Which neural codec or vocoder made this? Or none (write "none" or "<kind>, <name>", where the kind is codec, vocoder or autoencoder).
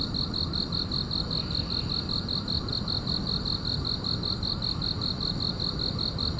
none